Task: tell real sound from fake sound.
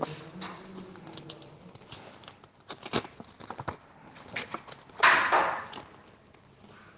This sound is real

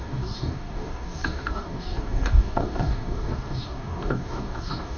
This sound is fake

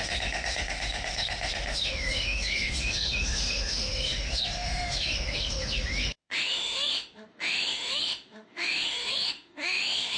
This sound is fake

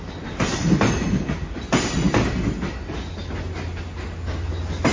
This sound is real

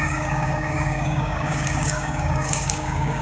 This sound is fake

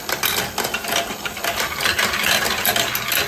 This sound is real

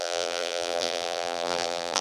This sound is fake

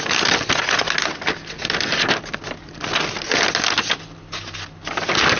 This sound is real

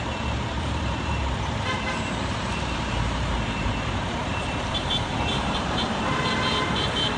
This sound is fake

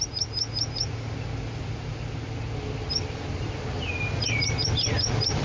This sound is real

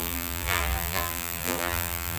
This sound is fake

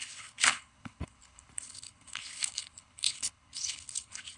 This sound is fake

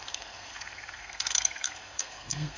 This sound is fake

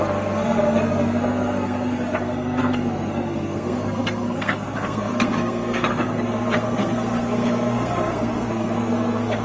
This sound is fake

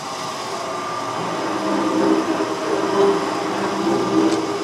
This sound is real